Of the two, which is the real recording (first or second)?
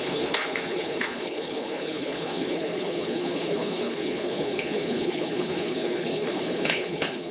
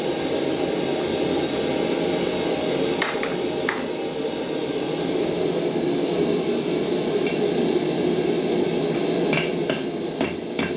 second